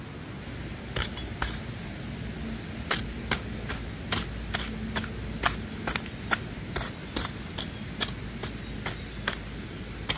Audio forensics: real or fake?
real